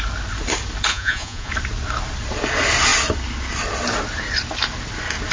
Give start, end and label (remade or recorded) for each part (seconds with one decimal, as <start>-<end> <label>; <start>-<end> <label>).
0.0-0.9 recorded; 0.9-1.5 remade; 1.5-5.3 recorded